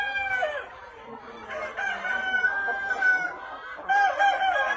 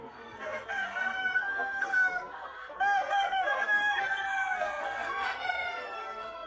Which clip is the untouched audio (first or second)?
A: first